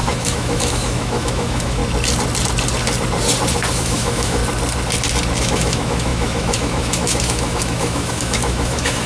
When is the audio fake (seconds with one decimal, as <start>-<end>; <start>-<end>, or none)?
0.0-1.8; 3.7-4.4; 5.4-9.1